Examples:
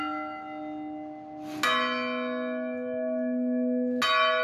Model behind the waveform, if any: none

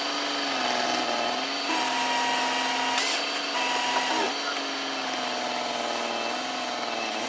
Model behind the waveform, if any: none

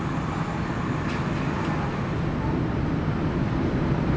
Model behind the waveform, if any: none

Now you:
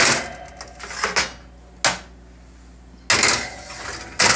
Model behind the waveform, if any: none